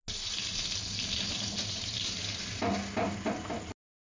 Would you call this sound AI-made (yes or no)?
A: no